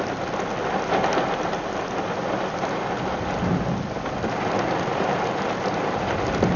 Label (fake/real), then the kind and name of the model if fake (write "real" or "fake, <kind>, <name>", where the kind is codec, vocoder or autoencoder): real